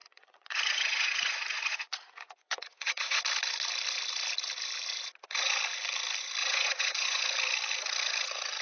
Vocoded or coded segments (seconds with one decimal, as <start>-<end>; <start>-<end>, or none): 0.0-3.2; 6.4-7.2